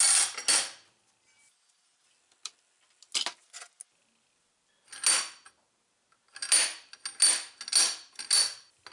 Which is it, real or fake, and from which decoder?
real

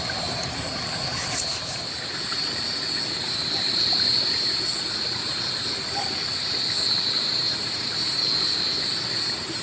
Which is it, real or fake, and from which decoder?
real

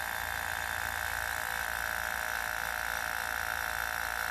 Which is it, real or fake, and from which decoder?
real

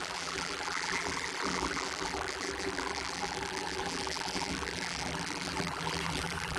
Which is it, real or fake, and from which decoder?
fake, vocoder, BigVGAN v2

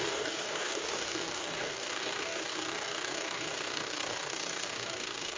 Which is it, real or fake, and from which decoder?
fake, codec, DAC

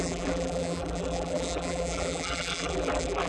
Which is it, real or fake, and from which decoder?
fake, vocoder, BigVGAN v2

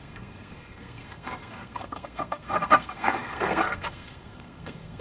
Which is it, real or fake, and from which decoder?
fake, codec, SNAC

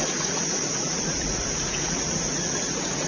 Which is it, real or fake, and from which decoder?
fake, vocoder, Vocos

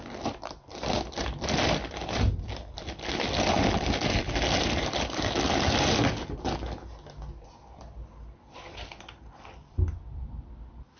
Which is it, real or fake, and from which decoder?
real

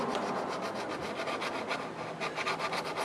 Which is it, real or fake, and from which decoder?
real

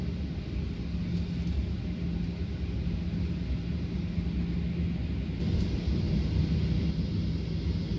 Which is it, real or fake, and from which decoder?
real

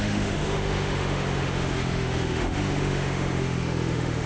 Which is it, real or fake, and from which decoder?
fake, autoencoder, DAC-VAE